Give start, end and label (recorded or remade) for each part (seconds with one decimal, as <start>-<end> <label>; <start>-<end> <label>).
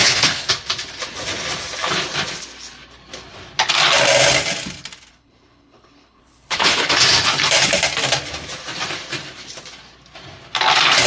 0.0-0.5 remade; 0.5-5.1 recorded; 5.1-6.9 remade; 6.9-11.1 recorded